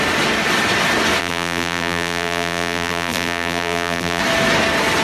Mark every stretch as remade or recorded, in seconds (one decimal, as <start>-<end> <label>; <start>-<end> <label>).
0.0-1.2 recorded; 1.2-4.2 remade; 4.2-5.0 recorded